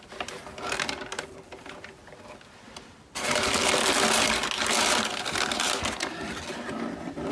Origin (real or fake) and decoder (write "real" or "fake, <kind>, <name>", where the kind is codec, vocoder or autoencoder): real